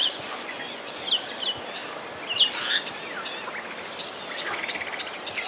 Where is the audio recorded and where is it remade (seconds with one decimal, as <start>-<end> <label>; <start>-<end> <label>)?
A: 0.0-1.0 remade; 1.0-5.5 recorded

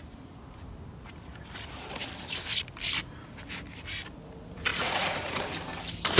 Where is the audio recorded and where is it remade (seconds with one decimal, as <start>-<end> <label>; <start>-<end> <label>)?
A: 0.0-4.7 recorded; 4.7-5.4 remade; 5.4-6.2 recorded

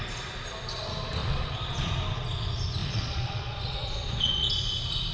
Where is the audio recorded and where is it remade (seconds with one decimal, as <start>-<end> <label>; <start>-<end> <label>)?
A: 0.0-1.2 recorded; 1.2-1.9 remade; 1.9-2.8 recorded; 2.8-4.5 remade; 4.5-5.1 recorded

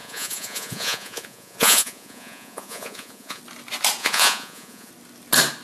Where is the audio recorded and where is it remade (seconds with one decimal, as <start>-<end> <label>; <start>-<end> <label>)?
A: 0.0-3.4 remade; 3.4-4.0 recorded; 4.0-4.9 remade; 4.9-5.6 recorded

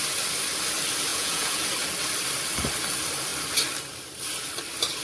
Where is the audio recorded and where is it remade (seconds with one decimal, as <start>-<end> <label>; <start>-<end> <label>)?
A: 0.0-1.1 recorded; 1.1-1.7 remade; 1.7-5.0 recorded

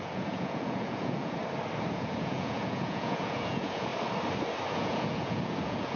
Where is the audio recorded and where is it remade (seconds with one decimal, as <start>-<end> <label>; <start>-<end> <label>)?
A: 0.0-1.4 remade; 1.4-1.9 recorded; 1.9-3.9 remade; 3.9-4.7 recorded; 4.7-6.0 remade

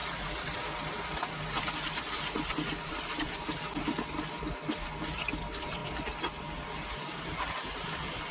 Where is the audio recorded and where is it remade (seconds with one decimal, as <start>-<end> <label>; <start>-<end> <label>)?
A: 0.0-8.3 recorded